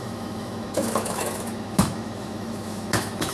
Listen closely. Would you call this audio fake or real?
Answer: fake